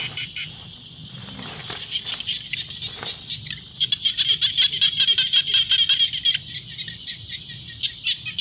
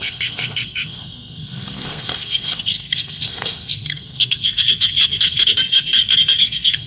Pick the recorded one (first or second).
first